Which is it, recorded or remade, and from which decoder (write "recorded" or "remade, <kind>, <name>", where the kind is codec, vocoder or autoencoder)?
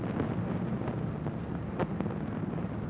recorded